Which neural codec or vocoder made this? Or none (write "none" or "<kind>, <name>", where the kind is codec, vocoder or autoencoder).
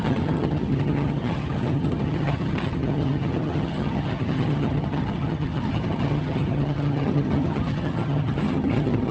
vocoder, HiFi-GAN